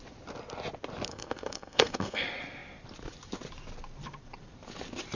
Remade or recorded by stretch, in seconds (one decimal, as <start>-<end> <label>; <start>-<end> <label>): 0.0-1.1 recorded; 1.1-2.2 remade; 2.2-5.2 recorded